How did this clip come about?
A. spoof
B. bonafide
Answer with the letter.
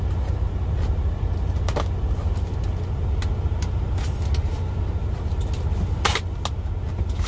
B